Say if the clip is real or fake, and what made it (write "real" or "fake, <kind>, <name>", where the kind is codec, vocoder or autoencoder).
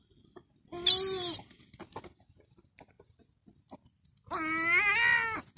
real